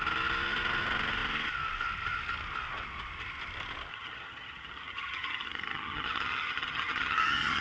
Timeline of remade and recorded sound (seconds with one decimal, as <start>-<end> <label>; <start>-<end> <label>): 0.0-3.9 recorded; 3.9-7.6 remade